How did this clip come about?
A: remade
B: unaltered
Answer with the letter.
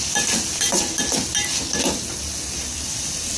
B